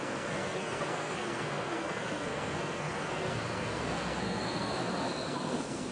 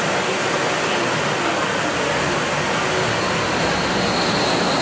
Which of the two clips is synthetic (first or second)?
first